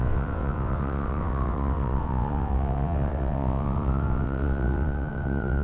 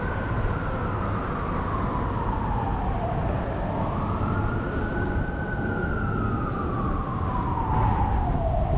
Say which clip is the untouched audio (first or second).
second